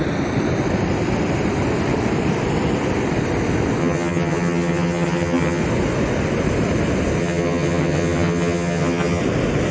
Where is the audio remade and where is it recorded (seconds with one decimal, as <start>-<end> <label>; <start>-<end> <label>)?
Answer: 0.0-3.8 recorded; 3.8-5.6 remade; 5.6-7.2 recorded; 7.2-9.2 remade; 9.2-9.7 recorded